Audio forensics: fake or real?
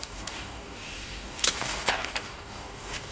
fake